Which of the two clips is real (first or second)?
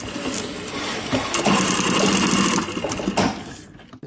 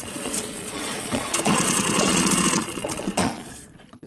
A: first